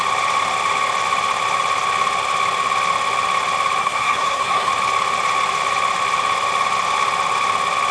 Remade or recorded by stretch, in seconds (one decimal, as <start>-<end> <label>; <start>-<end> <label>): 0.0-3.8 recorded; 3.8-4.7 remade; 4.7-7.9 recorded